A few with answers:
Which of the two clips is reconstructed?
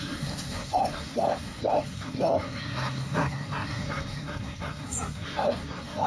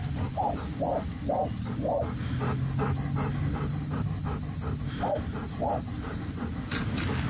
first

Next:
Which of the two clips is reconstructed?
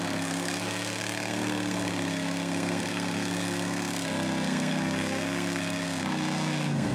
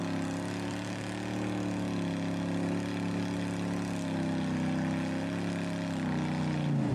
first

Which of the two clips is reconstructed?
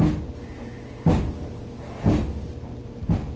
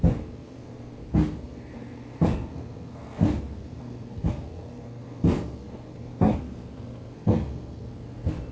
second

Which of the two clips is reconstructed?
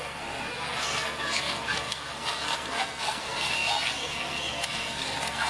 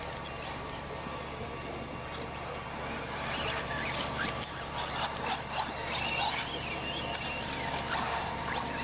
first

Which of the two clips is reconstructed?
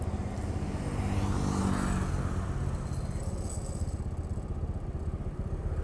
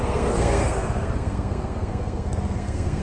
second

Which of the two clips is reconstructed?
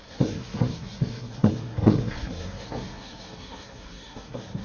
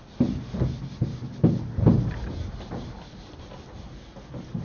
first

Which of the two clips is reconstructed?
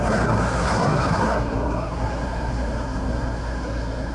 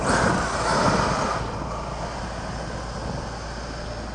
first